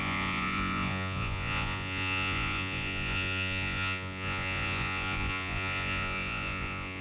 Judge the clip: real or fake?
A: fake